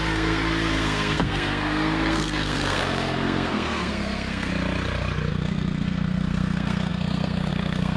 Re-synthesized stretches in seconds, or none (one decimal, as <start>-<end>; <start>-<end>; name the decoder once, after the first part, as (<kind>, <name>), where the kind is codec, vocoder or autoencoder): 0.0-4.5 (codec, SNAC); 5.3-8.0